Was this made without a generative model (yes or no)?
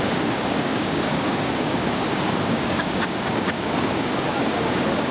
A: no